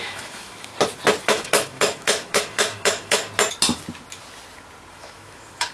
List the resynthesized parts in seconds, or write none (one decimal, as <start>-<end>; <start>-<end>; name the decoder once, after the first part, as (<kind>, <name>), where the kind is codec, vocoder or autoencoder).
0.0-0.7 (autoencoder, DAC-VAE); 1.2-3.2; 4.9-5.7